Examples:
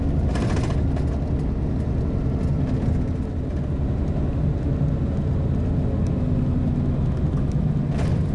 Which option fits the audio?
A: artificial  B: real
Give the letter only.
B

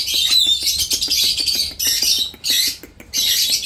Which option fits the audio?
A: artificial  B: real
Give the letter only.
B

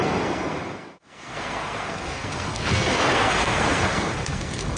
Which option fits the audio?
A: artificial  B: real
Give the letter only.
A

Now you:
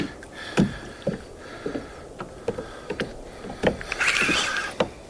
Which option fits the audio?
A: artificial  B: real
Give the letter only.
B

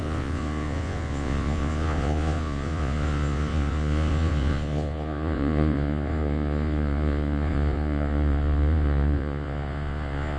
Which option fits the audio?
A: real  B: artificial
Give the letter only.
B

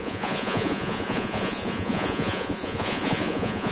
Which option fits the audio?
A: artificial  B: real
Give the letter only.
A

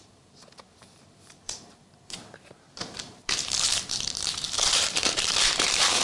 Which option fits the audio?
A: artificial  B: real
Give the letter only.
A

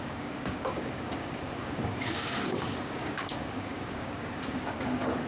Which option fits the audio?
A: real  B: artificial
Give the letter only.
B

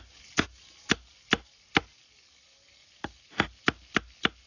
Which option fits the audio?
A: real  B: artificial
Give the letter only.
A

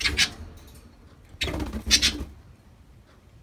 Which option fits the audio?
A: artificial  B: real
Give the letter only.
B